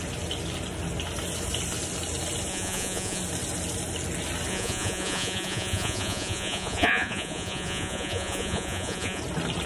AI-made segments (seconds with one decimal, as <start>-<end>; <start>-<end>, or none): 2.5-3.2; 4.5-9.2